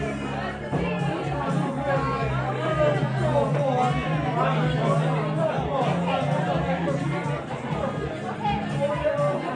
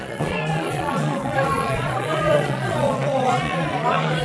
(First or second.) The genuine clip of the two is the first